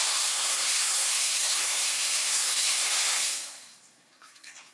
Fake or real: fake